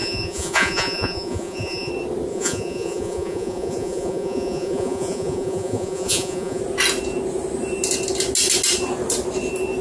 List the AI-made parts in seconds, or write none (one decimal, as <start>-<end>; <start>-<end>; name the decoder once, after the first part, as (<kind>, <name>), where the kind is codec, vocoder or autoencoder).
0.0-1.9 (vocoder, Vocos); 2.3-6.6